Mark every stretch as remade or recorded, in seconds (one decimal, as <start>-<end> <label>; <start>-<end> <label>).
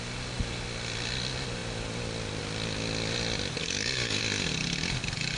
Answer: 0.0-3.6 recorded; 3.6-4.2 remade; 4.2-5.4 recorded